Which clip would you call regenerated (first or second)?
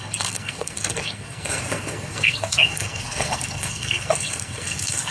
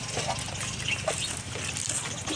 first